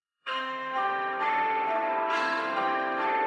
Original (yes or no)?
no